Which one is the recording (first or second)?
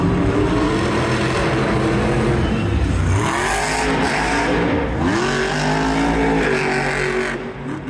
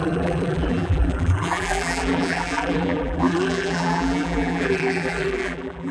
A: first